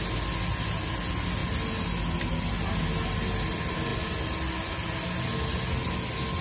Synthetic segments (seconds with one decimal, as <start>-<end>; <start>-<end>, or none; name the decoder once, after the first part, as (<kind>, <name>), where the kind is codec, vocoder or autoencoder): none